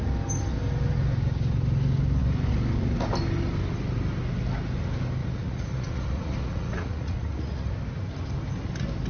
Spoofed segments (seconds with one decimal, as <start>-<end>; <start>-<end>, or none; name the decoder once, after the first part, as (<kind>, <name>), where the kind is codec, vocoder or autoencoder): 5.2-7.7 (vocoder, Vocos)